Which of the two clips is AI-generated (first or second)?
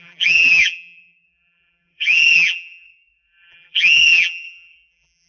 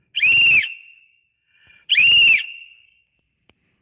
first